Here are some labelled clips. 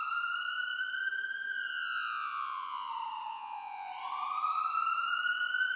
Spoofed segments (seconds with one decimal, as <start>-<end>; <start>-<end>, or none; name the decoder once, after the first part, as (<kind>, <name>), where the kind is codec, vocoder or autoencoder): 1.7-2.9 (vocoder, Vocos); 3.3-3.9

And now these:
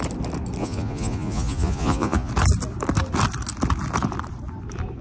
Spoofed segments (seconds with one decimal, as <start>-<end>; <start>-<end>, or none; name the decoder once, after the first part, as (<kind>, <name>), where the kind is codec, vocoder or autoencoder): 0.6-2.3 (vocoder, Vocos)

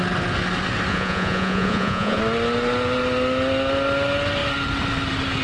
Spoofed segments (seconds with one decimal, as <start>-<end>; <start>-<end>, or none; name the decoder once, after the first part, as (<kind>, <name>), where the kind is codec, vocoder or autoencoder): 0.9-2.2 (vocoder, Vocos)